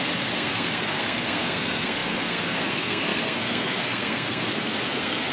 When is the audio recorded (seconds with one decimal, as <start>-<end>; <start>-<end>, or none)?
none